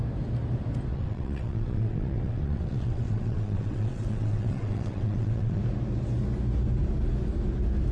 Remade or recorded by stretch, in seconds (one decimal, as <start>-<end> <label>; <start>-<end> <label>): 0.0-0.9 recorded; 0.9-5.6 remade; 5.6-7.9 recorded